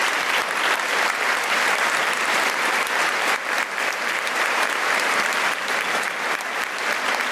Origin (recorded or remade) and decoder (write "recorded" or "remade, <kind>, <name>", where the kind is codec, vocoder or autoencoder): remade, vocoder, BigVGAN v2